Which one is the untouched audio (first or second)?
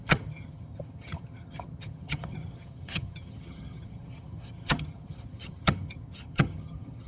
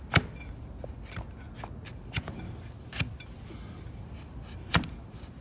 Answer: second